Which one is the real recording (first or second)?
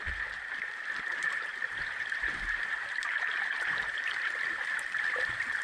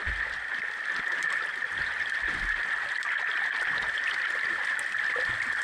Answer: second